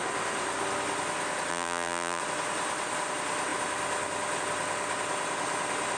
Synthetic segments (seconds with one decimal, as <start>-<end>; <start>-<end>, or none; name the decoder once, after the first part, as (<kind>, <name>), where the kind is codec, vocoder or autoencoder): 1.5-2.2 (vocoder, BigVGAN v2)